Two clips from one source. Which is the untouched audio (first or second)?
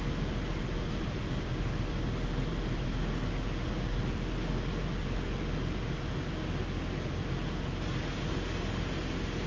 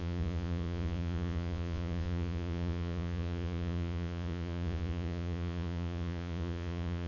first